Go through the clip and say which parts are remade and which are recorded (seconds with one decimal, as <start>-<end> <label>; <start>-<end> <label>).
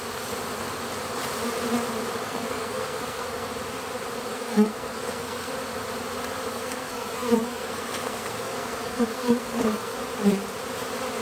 0.0-2.2 recorded; 2.2-3.5 remade; 3.5-4.3 recorded; 4.3-5.5 remade; 5.5-6.5 recorded; 6.5-10.0 remade; 10.0-11.2 recorded